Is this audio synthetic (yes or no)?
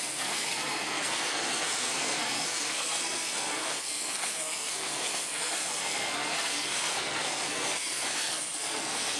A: yes